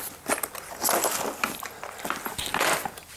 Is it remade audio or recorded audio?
recorded